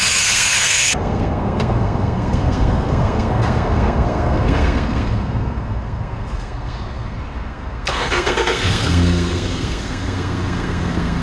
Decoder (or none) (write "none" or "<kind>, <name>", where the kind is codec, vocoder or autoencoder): codec, SNAC